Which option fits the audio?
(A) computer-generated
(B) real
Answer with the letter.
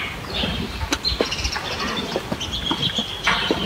B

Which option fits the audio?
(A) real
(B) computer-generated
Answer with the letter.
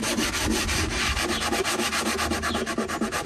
A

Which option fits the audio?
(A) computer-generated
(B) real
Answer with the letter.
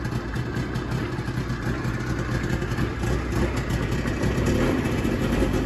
B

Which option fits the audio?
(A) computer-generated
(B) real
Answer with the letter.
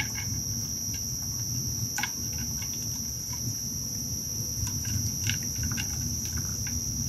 B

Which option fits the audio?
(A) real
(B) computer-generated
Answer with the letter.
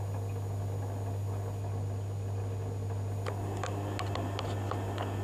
A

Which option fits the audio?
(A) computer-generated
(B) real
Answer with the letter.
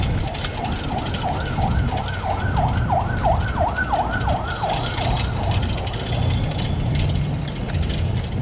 B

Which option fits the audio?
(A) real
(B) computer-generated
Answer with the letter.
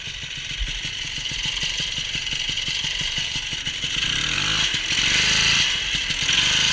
B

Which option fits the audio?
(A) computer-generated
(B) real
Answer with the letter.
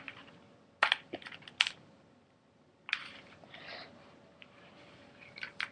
B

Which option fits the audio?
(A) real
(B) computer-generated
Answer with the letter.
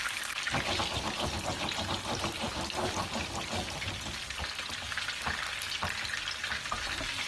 A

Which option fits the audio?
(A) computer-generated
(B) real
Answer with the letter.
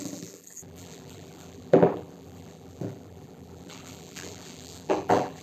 A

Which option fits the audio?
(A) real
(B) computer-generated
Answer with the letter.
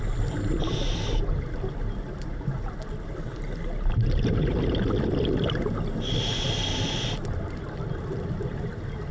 A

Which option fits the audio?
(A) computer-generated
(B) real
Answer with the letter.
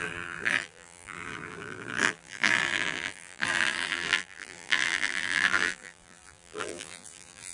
A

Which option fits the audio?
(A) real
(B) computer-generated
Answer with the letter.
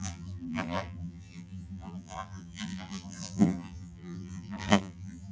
B